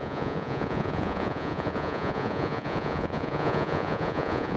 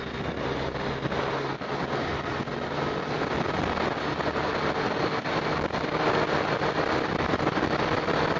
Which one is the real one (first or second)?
second